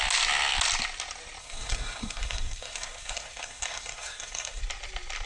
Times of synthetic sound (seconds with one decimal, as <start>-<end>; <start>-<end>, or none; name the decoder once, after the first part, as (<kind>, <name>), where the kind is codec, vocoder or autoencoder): 1.4-4.6 (codec, SNAC)